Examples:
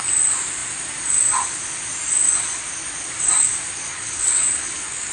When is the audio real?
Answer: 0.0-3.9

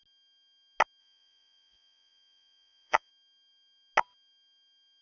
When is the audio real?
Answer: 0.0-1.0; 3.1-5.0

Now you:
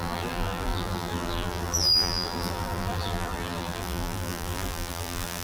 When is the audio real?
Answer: none

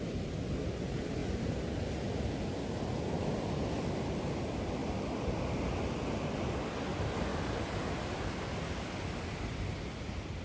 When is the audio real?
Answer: 0.0-10.4

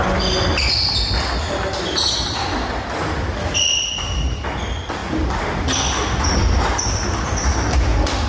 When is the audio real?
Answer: 0.0-8.3

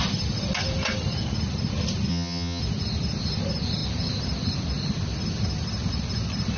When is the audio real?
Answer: 0.0-2.1; 2.6-6.6

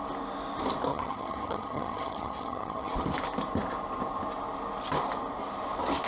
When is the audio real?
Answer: 0.0-0.9; 2.9-6.1